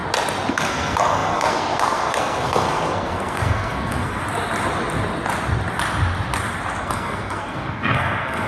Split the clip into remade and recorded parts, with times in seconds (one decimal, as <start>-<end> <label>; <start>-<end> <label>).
0.0-0.5 recorded; 0.5-4.2 remade; 4.2-6.8 recorded; 6.8-8.5 remade